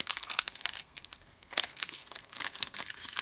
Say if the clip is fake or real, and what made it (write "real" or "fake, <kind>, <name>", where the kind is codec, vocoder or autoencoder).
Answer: fake, codec, SNAC